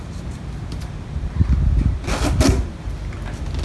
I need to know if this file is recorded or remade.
recorded